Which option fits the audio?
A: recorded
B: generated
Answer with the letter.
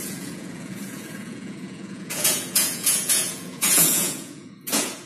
B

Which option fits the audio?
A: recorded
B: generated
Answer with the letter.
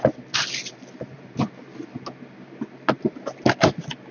A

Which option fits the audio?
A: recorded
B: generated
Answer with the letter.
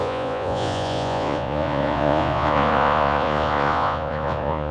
B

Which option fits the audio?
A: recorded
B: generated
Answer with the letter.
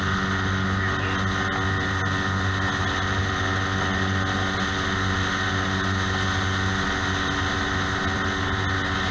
A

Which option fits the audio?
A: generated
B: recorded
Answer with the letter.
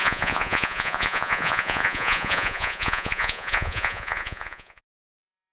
A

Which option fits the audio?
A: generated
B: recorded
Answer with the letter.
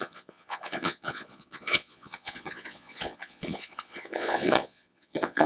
A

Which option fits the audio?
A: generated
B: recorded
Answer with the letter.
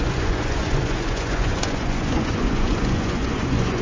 A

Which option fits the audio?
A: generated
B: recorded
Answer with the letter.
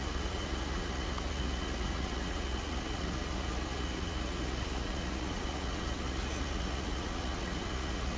A